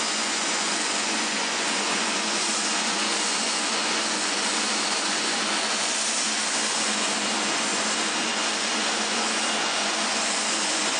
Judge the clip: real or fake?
fake